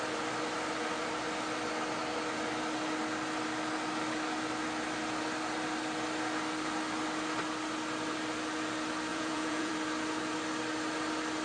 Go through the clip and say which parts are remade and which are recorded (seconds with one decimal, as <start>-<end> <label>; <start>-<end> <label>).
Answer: 0.0-9.1 recorded; 9.1-9.7 remade; 9.7-11.4 recorded